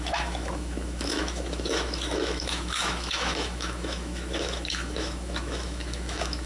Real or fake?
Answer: fake